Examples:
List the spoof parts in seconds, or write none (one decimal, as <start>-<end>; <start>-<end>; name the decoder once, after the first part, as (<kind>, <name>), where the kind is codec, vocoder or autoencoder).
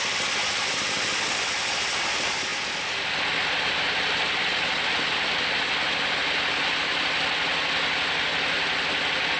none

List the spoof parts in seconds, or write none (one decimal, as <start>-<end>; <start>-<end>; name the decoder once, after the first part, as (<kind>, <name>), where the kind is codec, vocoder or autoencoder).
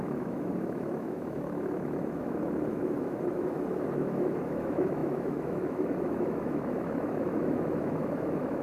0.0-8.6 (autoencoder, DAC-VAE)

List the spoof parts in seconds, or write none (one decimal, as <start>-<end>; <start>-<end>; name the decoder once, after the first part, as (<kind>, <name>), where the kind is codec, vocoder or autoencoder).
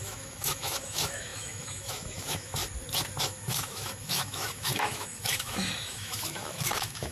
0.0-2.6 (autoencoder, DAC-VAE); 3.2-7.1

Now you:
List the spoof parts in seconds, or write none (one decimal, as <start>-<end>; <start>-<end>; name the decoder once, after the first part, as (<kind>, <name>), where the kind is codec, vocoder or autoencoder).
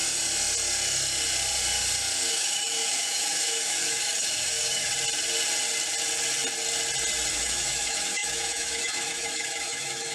2.3-4.9 (autoencoder, DAC-VAE); 7.3-10.1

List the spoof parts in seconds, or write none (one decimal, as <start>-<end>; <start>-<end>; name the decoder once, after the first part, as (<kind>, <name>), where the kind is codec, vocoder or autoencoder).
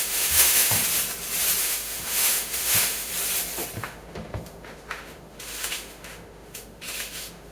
0.0-0.8 (autoencoder, DAC-VAE); 1.6-3.1; 3.8-7.5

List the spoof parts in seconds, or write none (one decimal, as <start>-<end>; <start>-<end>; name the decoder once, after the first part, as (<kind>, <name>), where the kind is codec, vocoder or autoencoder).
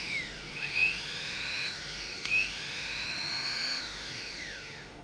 0.0-5.0 (autoencoder, DAC-VAE)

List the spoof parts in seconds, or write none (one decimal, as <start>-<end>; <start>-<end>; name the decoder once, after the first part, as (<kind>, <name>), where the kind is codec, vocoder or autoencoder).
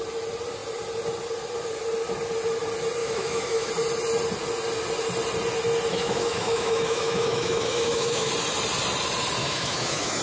3.0-3.7 (autoencoder, DAC-VAE); 5.9-8.3; 9.4-10.2